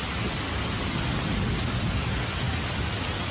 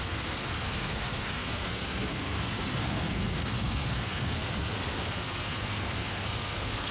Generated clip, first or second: second